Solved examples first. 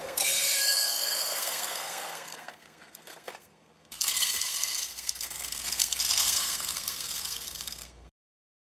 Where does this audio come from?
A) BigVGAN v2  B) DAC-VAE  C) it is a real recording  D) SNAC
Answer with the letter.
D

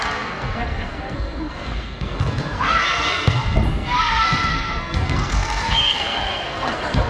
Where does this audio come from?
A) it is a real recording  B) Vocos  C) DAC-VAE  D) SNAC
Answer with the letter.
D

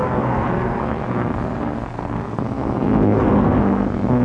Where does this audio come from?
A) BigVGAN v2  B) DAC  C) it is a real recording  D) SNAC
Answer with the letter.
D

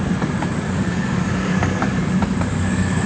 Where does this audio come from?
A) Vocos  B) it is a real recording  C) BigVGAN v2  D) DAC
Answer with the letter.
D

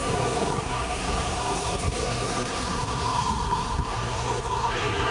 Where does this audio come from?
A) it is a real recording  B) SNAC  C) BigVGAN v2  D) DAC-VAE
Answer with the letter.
B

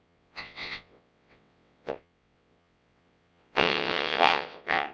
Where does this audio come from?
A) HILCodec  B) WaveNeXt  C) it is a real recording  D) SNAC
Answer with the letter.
B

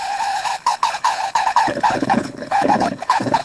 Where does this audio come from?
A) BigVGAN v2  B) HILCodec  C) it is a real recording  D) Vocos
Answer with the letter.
B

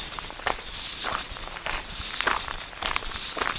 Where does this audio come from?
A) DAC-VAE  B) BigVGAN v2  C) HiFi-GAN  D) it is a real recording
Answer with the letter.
D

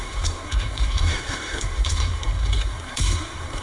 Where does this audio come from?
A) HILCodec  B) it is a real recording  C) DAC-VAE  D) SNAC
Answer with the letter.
D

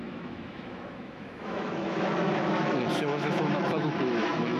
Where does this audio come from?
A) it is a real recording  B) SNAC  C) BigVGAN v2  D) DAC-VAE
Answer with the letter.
D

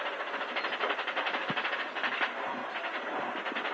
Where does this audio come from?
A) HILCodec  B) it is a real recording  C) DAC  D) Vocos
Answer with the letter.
B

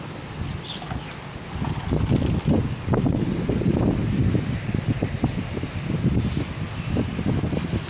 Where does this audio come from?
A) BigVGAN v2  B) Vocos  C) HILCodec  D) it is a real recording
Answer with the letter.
D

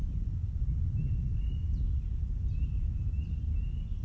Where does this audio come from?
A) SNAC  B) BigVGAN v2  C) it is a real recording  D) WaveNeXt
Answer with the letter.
C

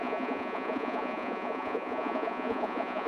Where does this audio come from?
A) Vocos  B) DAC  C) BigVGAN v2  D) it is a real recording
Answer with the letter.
A